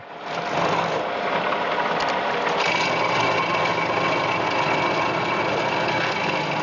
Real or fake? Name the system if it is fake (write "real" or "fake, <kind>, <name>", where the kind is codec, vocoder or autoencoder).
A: real